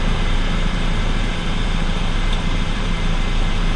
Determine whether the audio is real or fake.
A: fake